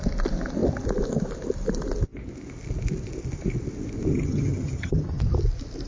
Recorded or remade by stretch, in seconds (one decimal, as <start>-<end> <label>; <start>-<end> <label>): 0.0-4.1 recorded; 4.1-5.2 remade; 5.2-5.9 recorded